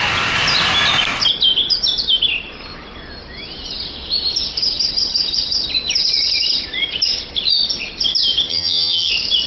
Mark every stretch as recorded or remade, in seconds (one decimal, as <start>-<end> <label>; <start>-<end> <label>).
0.0-8.5 recorded; 8.5-9.1 remade; 9.1-9.5 recorded